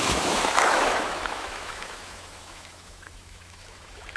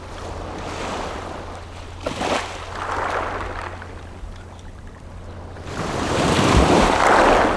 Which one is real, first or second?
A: second